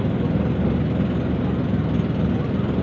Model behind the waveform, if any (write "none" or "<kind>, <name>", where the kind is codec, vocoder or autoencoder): none